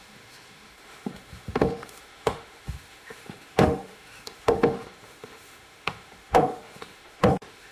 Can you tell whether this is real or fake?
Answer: fake